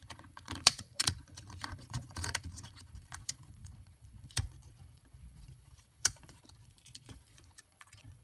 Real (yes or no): no